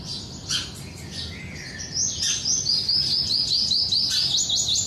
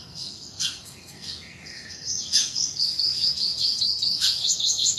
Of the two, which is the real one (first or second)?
first